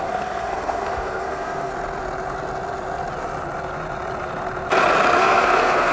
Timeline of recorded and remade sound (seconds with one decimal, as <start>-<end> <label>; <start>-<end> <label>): 0.0-1.7 remade; 1.7-5.2 recorded; 5.2-5.9 remade